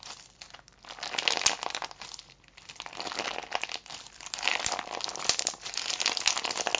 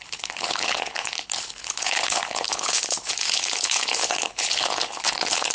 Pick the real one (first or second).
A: first